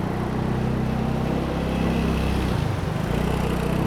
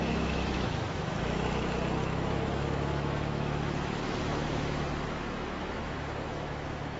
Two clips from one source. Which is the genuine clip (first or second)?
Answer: first